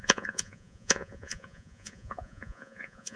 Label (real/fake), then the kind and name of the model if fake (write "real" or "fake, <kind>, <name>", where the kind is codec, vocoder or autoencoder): fake, vocoder, Vocos